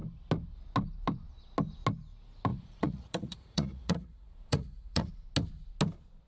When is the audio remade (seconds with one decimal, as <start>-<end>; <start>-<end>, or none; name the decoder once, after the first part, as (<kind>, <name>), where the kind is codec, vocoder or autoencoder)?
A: 2.5-5.1 (vocoder, Vocos)